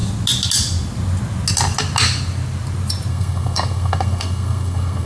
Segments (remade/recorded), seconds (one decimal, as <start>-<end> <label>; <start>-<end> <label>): 0.0-3.1 recorded; 3.1-5.1 remade